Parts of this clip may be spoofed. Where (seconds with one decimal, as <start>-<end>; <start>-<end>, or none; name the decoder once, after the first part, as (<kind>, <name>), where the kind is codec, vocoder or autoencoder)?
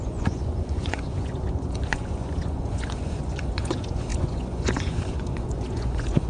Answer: 0.0-6.3 (vocoder, Vocos)